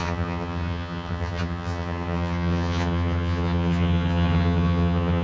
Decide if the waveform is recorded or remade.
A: remade